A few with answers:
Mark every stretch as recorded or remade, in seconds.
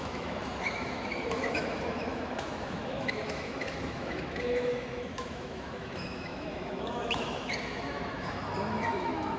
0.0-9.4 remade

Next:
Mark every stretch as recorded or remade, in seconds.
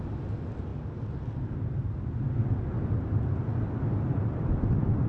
0.0-5.1 recorded